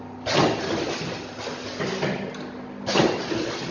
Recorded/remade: recorded